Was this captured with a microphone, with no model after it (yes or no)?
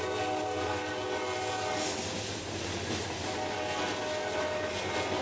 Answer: yes